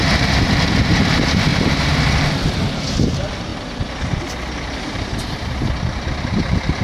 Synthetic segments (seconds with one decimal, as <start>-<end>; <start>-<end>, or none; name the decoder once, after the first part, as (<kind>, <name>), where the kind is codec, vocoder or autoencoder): 0.0-3.5 (vocoder, BigVGAN v2)

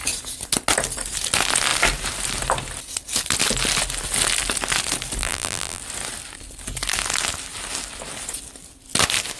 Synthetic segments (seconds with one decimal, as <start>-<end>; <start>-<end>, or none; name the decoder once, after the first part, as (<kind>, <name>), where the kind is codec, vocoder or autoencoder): 5.2-5.8 (vocoder, BigVGAN v2)

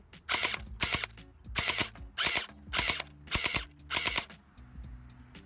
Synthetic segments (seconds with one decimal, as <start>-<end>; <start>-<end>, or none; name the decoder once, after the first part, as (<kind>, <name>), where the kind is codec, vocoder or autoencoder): none